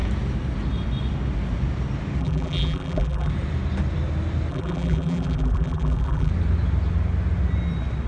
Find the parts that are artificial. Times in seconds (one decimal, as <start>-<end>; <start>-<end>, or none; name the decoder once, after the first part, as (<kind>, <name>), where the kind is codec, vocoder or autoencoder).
2.2-3.3 (vocoder, BigVGAN v2); 4.5-6.3